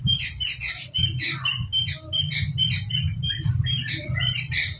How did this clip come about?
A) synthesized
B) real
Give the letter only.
A